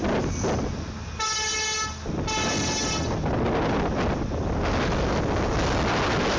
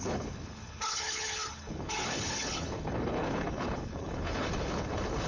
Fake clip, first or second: second